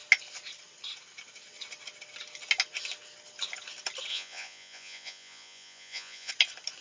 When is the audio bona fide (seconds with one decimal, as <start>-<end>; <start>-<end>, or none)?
0.0-4.1; 6.3-6.8